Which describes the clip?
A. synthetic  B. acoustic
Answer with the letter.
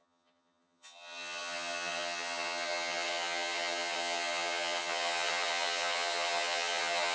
A